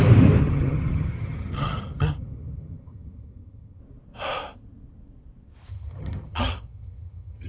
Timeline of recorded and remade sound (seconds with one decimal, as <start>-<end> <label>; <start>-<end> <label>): 0.0-0.4 recorded; 0.4-3.8 remade; 3.8-5.7 recorded; 5.7-7.5 remade